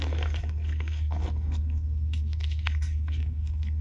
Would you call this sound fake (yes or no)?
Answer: yes